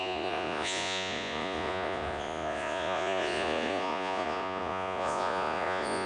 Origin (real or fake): fake